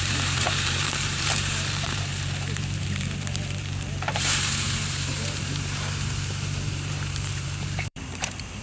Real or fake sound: fake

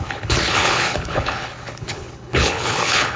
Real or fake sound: fake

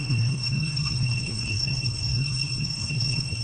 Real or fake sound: fake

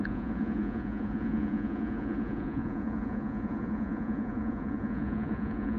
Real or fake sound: fake